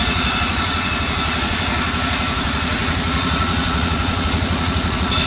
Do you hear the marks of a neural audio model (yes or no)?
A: yes